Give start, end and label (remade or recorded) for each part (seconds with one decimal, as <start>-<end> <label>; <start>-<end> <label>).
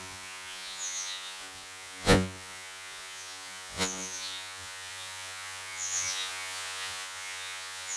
0.0-8.0 remade